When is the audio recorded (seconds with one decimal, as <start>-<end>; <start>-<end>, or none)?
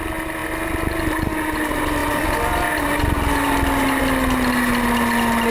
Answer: 0.0-5.5